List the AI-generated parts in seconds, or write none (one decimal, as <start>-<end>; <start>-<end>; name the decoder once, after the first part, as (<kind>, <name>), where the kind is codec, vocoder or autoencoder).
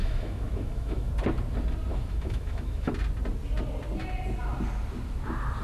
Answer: 0.0-1.1 (autoencoder, DAC-VAE); 1.9-2.9